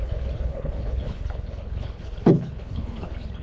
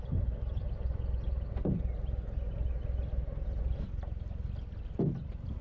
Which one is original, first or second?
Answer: second